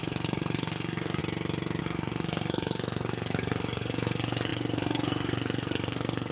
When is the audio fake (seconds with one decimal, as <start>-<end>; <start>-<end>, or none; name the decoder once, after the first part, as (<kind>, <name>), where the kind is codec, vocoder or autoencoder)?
0.0-1.2 (codec, SNAC); 1.8-6.3

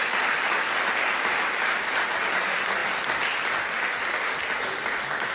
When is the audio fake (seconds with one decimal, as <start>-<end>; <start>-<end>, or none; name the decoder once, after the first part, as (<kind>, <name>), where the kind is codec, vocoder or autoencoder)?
none

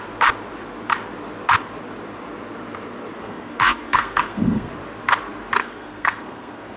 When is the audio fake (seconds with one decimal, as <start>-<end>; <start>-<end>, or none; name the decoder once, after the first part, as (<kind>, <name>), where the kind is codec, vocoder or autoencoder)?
3.2-4.7 (codec, SNAC); 5.6-6.8

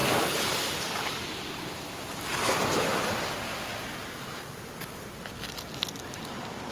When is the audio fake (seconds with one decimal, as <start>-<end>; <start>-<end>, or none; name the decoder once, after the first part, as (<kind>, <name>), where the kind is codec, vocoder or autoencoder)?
none

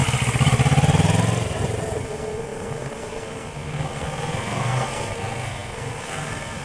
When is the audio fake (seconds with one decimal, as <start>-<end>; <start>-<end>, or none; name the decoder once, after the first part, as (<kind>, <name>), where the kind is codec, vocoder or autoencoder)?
2.0-6.6 (codec, SNAC)